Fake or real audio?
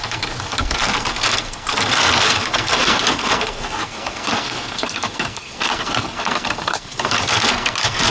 fake